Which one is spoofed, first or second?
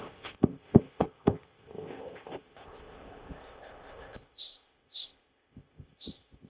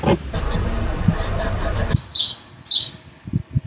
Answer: first